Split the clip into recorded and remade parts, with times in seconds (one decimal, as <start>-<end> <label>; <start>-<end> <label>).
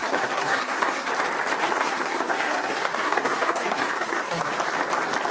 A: 0.0-1.1 remade; 1.1-1.6 recorded; 1.6-4.5 remade; 4.5-5.3 recorded